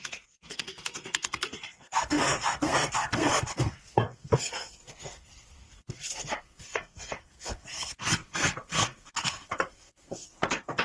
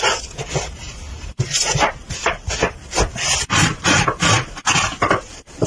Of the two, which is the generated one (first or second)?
first